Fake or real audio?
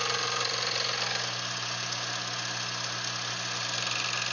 real